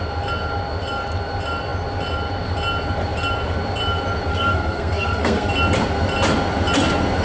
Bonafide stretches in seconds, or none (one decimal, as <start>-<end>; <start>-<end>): 0.0-4.3; 5.5-7.2